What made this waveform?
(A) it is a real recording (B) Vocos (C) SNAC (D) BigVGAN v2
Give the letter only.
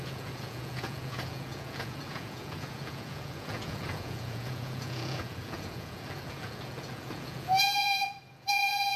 B